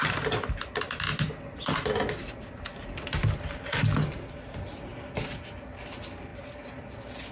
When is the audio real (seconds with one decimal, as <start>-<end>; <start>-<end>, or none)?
0.0-7.3